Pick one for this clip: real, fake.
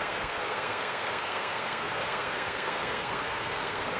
fake